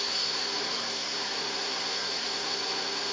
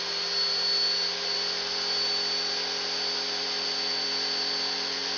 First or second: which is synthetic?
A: first